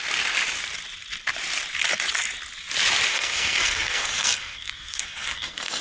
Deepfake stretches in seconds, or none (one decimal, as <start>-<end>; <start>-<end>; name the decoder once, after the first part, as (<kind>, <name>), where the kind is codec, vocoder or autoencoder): 3.1-5.8 (codec, SNAC)